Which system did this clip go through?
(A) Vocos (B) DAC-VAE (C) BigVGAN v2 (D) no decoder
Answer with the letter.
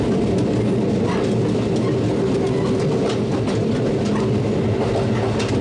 D